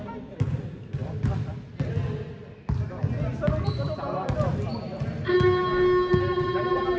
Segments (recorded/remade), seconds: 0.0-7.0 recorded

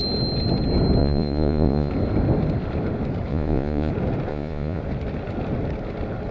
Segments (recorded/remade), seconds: 0.0-1.0 recorded; 1.0-1.9 remade; 1.9-3.3 recorded; 3.3-3.9 remade; 3.9-4.3 recorded; 4.3-4.8 remade; 4.8-6.3 recorded

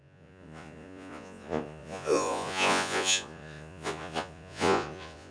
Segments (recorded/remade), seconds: 0.0-5.3 remade

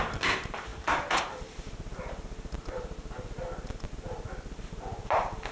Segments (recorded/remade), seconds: 0.0-5.5 recorded

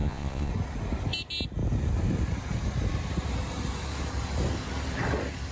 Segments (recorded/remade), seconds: 0.0-0.5 remade; 0.5-5.5 recorded

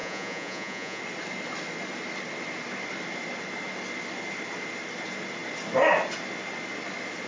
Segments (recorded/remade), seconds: 0.0-1.0 remade; 1.0-7.3 recorded

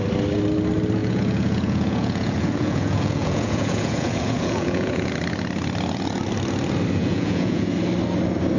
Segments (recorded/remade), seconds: 0.0-1.0 recorded; 1.0-5.1 remade; 5.1-7.0 recorded; 7.0-7.7 remade; 7.7-8.6 recorded

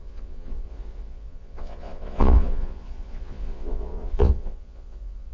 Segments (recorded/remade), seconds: 0.0-5.3 remade